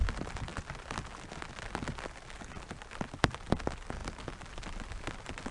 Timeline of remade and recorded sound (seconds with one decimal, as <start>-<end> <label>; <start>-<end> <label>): 0.0-5.5 recorded